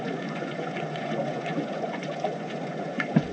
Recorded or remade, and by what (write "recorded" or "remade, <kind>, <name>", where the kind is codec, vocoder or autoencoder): remade, vocoder, Vocos